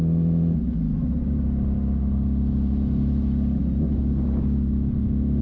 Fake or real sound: real